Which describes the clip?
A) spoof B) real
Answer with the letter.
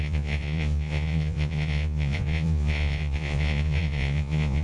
A